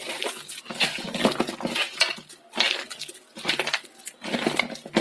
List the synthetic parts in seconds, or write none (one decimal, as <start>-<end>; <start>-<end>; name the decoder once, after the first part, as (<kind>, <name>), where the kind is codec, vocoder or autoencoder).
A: none

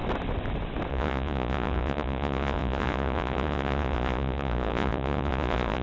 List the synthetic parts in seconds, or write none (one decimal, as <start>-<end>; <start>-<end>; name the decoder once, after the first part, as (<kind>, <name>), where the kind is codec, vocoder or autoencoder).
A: 0.9-5.8 (vocoder, Vocos)